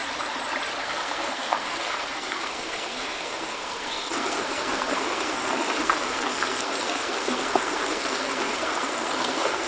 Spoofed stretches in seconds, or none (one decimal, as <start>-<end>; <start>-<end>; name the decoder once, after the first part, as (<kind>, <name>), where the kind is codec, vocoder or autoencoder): 0.8-9.7 (codec, SNAC)

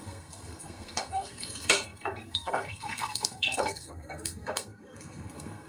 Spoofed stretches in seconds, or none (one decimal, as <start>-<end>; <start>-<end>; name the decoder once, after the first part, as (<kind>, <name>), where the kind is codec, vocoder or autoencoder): 0.0-5.7 (codec, SNAC)

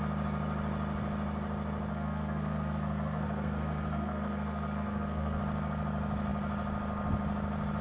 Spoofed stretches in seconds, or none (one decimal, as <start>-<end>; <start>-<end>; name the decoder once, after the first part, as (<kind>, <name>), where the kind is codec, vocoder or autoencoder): 1.9-5.4 (codec, SNAC)

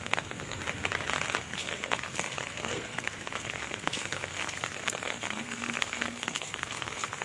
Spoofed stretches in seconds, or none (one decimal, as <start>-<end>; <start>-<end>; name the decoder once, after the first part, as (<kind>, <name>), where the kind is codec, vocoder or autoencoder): 0.0-0.6 (codec, SNAC); 1.4-7.2

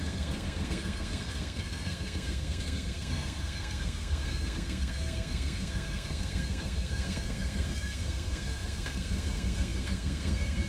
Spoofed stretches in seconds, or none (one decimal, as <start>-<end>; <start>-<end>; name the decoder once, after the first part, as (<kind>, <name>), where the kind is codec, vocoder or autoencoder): 0.0-10.7 (codec, SNAC)

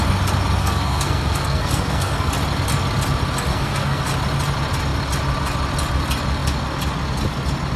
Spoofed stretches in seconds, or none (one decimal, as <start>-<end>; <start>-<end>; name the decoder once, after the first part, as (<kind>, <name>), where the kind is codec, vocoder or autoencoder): 0.6-2.3 (codec, SNAC); 3.5-4.0

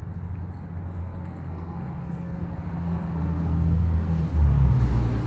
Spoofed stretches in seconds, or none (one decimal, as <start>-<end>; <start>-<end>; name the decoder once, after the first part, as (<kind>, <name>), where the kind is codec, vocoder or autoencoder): 1.0-4.2 (codec, SNAC)

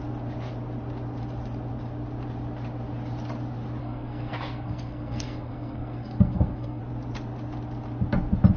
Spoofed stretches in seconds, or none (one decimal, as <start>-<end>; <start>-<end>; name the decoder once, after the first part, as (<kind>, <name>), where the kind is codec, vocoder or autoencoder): 3.8-6.8 (codec, SNAC)